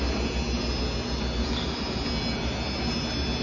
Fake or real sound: real